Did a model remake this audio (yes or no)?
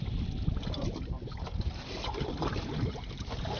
no